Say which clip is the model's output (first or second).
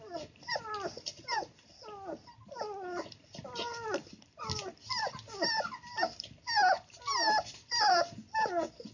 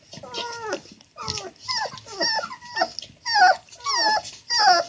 first